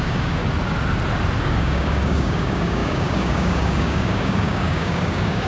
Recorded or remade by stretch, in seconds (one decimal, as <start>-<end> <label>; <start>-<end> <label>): 0.0-0.4 remade; 0.4-1.4 recorded; 1.4-5.5 remade